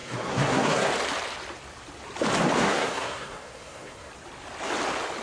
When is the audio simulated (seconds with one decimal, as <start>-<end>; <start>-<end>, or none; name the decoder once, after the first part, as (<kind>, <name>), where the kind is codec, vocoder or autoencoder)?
0.0-0.9 (codec, SNAC); 2.6-4.1

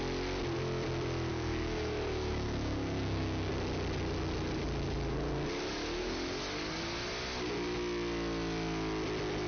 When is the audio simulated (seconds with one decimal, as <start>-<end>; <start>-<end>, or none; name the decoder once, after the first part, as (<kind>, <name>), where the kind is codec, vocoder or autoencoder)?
1.3-3.5 (codec, DAC); 6.0-6.8

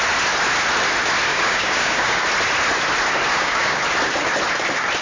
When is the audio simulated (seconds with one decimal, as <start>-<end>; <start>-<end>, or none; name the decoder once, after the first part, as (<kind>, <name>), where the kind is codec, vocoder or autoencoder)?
1.3-2.2 (codec, DAC); 3.3-3.8